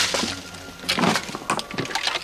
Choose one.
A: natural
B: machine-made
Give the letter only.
A